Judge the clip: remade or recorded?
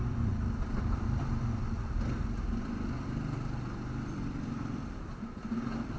remade